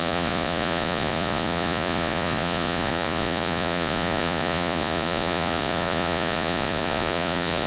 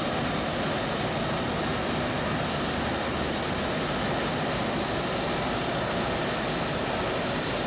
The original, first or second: second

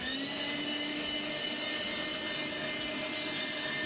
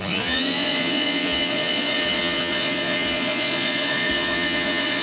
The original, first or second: first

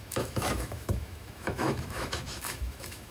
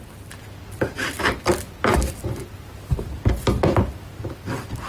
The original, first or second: second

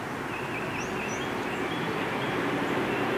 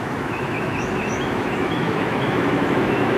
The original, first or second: first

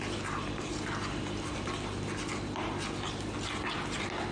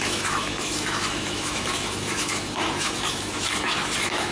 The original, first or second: first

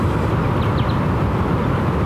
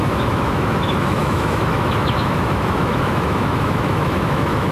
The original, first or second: first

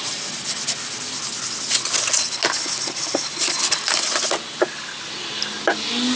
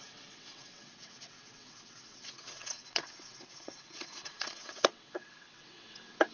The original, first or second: first